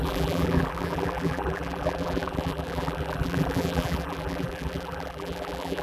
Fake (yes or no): yes